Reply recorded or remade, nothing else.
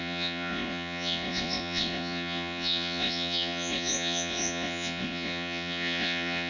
remade